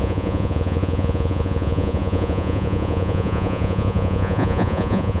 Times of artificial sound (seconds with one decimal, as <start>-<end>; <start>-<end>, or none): 0.0-5.2